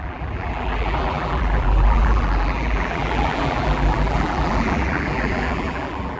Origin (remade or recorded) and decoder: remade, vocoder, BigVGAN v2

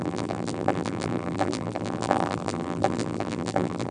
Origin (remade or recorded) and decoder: remade, vocoder, BigVGAN v2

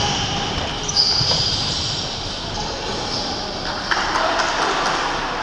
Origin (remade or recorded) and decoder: remade, vocoder, BigVGAN v2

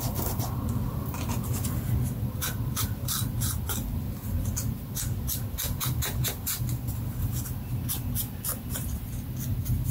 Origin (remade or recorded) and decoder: recorded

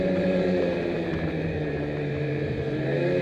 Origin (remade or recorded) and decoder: remade, vocoder, BigVGAN v2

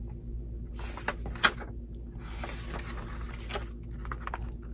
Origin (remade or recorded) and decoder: recorded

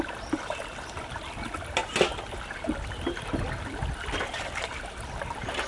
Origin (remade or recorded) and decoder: recorded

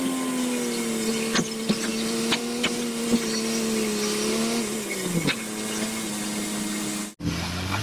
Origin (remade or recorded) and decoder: recorded